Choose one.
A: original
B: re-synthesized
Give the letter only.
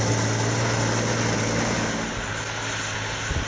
A